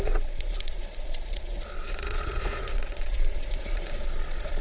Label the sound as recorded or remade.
remade